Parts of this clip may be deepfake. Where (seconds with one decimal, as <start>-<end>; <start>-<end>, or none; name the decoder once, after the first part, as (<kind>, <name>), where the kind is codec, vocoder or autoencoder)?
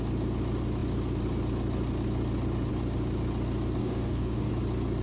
3.8-4.5 (codec, DAC)